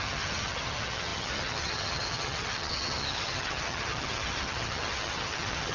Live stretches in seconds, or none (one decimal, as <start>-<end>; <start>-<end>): none